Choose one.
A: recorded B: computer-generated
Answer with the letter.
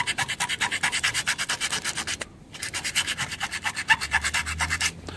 B